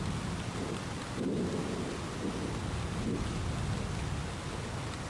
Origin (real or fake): real